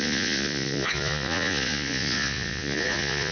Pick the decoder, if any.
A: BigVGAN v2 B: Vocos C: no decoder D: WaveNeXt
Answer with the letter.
B